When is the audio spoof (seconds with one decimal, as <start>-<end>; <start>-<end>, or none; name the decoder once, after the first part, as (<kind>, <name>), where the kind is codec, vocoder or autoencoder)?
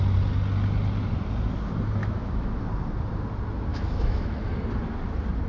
2.0-2.6 (autoencoder, DAC-VAE); 3.7-4.4